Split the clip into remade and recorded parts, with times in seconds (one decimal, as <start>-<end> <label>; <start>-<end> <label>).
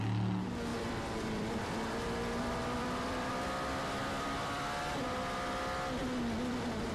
0.0-0.7 recorded; 0.7-3.3 remade; 3.3-4.0 recorded; 4.0-5.0 remade; 5.0-6.9 recorded